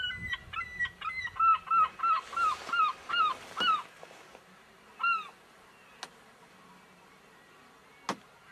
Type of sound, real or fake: real